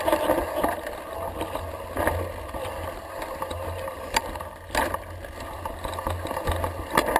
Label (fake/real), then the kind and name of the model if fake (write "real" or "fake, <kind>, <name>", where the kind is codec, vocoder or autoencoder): real